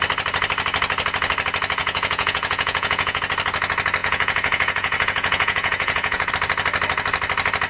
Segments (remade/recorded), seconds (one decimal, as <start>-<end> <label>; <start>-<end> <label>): 0.0-1.8 recorded; 1.8-3.2 remade; 3.2-4.0 recorded; 4.0-6.3 remade; 6.3-7.7 recorded